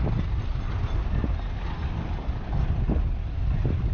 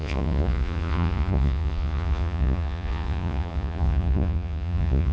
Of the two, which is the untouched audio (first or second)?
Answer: first